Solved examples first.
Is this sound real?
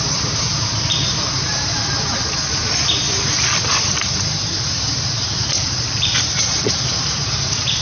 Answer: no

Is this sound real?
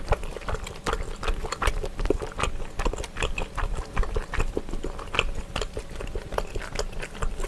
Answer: yes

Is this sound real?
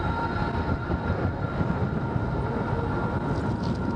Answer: yes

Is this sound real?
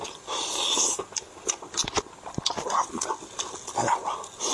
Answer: yes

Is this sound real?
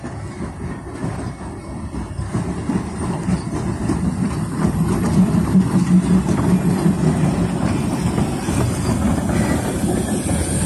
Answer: yes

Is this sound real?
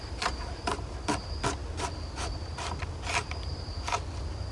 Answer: yes